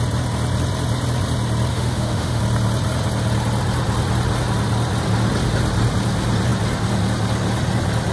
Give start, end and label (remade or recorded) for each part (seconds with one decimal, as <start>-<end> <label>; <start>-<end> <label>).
0.0-1.7 recorded; 1.7-2.4 remade; 2.4-8.1 recorded

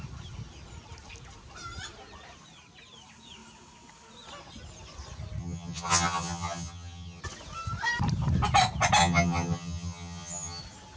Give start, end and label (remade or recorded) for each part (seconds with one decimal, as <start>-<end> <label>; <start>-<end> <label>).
0.0-5.4 recorded; 5.4-7.2 remade; 7.2-9.0 recorded; 9.0-10.6 remade; 10.6-11.0 recorded

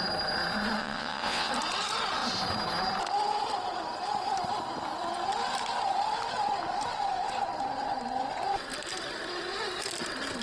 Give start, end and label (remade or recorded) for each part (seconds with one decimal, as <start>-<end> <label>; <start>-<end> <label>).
0.0-0.8 recorded; 0.8-1.5 remade; 1.5-10.4 recorded

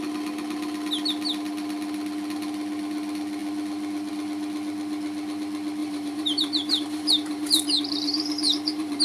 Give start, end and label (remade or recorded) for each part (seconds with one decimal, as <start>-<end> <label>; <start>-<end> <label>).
0.0-5.8 recorded; 5.8-9.0 remade